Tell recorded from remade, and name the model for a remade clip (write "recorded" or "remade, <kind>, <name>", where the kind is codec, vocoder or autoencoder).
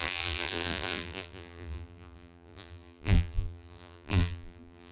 remade, vocoder, BigVGAN v2